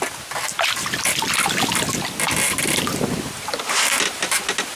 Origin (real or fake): real